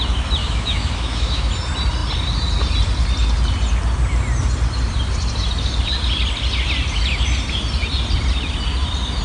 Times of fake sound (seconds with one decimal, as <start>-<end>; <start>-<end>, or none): 0.4-1.5